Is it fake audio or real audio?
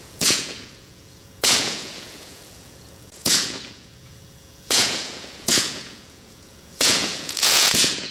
fake